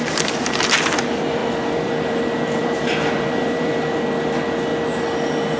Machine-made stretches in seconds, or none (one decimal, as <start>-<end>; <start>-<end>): 1.4-2.2; 2.6-3.7